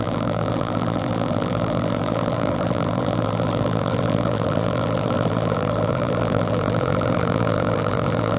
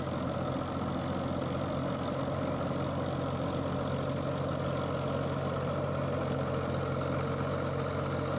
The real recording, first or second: second